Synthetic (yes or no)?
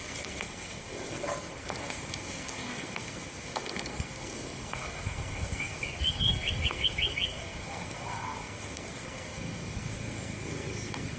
yes